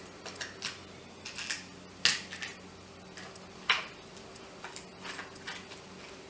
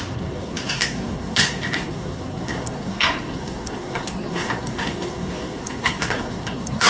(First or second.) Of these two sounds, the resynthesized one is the second